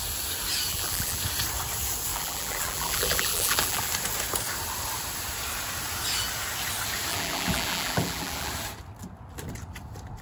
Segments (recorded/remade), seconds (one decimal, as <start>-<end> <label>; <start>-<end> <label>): 0.0-0.7 recorded; 0.7-1.2 remade; 1.2-2.1 recorded; 2.1-3.9 remade; 3.9-7.1 recorded; 7.1-8.5 remade; 8.5-10.2 recorded